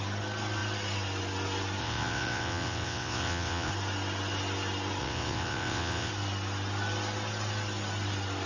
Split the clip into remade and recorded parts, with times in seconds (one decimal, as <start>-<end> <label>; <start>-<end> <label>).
0.0-1.8 recorded; 1.8-3.7 remade; 3.7-5.0 recorded; 5.0-6.1 remade; 6.1-8.5 recorded